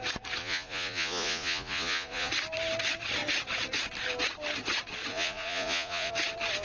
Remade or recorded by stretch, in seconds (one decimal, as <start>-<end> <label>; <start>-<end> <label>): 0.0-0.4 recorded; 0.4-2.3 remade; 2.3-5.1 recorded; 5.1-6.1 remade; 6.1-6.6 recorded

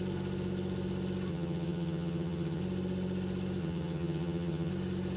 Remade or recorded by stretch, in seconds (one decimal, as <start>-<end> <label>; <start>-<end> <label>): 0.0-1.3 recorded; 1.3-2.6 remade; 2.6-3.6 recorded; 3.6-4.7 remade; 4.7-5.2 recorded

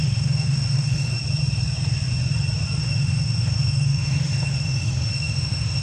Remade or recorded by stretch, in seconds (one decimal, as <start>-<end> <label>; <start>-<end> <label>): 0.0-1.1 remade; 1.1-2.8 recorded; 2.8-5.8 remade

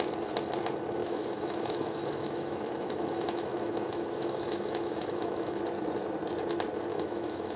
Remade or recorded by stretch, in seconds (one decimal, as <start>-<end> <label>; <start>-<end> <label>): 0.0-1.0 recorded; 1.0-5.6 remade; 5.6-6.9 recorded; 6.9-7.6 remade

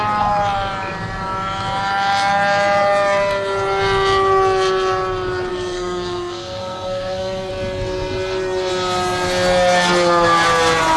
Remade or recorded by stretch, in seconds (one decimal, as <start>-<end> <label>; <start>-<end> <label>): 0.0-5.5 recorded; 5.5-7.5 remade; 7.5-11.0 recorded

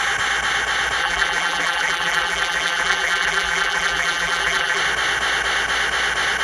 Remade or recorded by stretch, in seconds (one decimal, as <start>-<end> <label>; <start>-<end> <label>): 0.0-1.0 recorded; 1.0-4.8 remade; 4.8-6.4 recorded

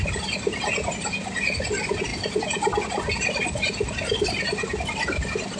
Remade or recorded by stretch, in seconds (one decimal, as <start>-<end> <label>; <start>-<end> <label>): 0.0-5.6 recorded